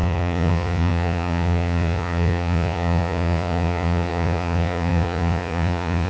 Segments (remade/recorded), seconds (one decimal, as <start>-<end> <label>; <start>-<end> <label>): 0.0-6.1 remade